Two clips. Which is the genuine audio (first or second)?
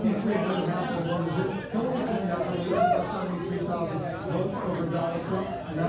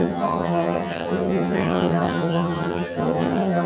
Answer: first